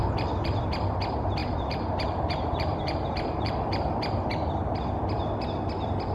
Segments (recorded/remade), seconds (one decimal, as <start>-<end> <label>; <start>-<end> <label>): 0.0-0.6 remade; 0.6-1.4 recorded; 1.4-3.5 remade; 3.5-6.1 recorded